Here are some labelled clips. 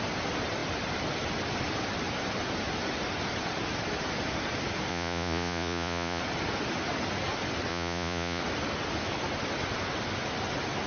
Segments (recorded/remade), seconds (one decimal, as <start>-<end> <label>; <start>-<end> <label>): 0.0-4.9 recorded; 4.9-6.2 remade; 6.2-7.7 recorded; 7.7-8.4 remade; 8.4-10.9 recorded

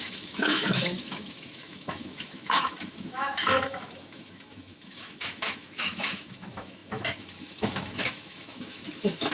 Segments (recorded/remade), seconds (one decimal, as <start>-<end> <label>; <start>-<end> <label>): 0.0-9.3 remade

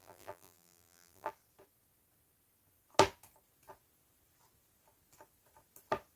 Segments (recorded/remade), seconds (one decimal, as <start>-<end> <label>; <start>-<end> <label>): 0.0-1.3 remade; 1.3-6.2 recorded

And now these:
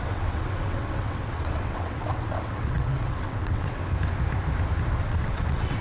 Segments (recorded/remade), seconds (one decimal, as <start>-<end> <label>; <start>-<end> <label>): 0.0-3.8 remade; 3.8-5.0 recorded; 5.0-5.8 remade

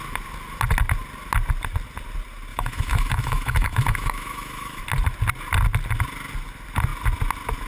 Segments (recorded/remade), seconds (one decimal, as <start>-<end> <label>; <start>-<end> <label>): 0.0-2.5 recorded; 2.5-4.8 remade; 4.8-7.7 recorded

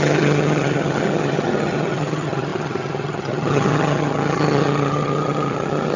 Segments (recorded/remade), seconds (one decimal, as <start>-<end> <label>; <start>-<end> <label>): 0.0-6.0 remade

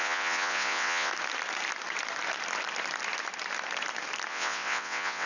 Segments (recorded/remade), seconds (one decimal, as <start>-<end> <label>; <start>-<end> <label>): 0.0-1.1 remade; 1.1-4.3 recorded; 4.3-5.3 remade

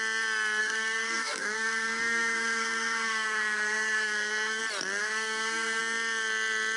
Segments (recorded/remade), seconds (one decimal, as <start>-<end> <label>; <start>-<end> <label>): 0.0-0.6 recorded; 0.6-4.6 remade; 4.6-5.0 recorded; 5.0-5.8 remade; 5.8-6.8 recorded